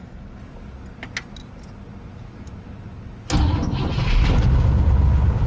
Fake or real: real